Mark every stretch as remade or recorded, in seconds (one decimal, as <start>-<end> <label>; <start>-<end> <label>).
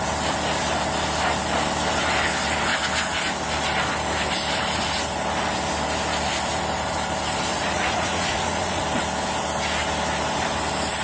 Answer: 0.0-7.5 recorded; 7.5-8.8 remade; 8.8-11.0 recorded